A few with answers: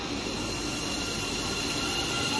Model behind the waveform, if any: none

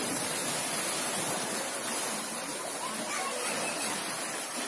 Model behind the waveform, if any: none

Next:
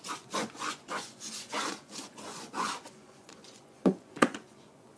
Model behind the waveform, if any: vocoder, Vocos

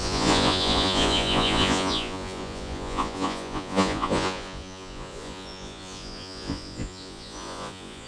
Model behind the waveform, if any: vocoder, Vocos